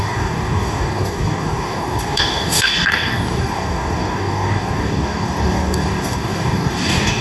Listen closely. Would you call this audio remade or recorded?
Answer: remade